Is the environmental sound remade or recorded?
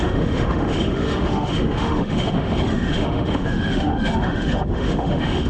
remade